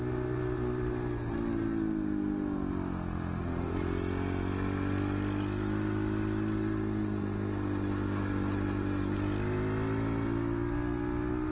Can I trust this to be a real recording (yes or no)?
yes